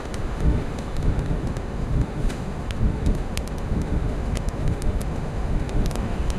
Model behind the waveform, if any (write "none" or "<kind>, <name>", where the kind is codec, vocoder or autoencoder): autoencoder, DAC-VAE